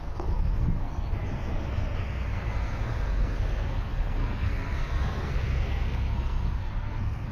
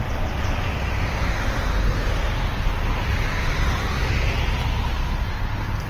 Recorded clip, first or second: second